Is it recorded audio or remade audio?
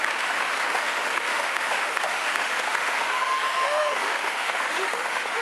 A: remade